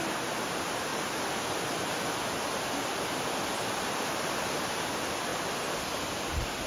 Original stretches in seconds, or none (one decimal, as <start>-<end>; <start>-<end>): 0.9-4.6; 5.3-5.8